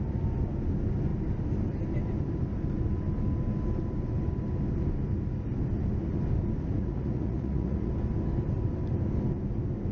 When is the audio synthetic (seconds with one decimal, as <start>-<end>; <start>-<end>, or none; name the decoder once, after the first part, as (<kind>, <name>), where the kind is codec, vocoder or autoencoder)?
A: 6.8-7.9 (vocoder, Vocos)